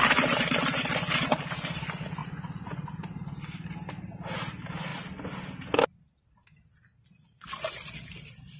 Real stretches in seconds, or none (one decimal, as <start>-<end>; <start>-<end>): 0.0-2.2; 2.9-8.6